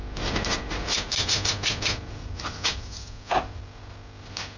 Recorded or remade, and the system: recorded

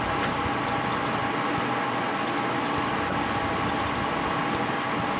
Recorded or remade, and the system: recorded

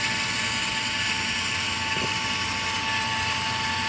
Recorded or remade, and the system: recorded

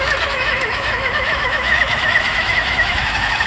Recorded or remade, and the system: remade, autoencoder, DAC-VAE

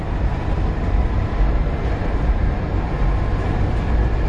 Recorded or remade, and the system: remade, vocoder, BigVGAN v2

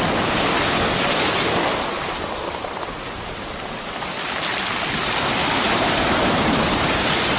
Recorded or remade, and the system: recorded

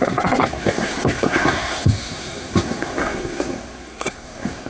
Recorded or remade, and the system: remade, codec, SNAC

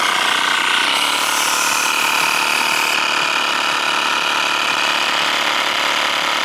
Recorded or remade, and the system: recorded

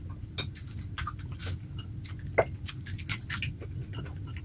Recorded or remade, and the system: recorded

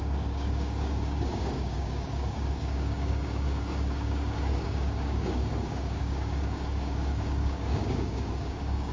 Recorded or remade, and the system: remade, codec, DAC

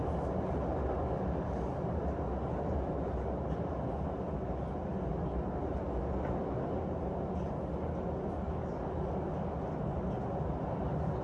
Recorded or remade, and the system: recorded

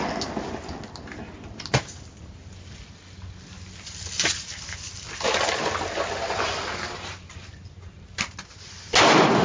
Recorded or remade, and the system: recorded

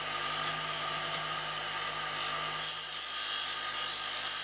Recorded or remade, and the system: recorded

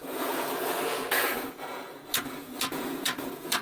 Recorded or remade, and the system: remade, vocoder, Vocos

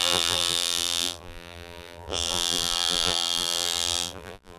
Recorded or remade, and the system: remade, vocoder, BigVGAN v2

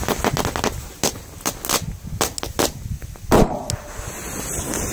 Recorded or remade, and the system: recorded